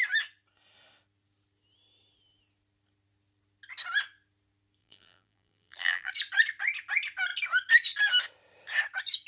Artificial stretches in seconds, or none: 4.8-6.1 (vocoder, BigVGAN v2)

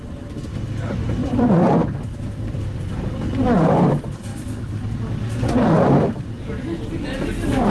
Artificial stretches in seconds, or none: 1.2-3.1 (vocoder, BigVGAN v2); 4.3-4.9

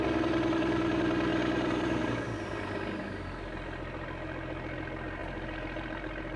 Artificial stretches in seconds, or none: 0.0-6.4 (vocoder, BigVGAN v2)

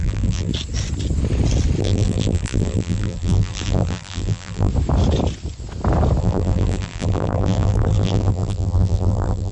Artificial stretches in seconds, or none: 0.0-0.5 (vocoder, BigVGAN v2); 1.8-4.7; 6.2-9.5